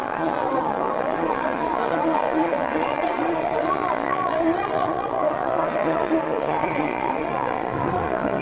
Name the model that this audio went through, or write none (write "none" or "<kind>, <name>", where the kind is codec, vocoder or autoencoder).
vocoder, Vocos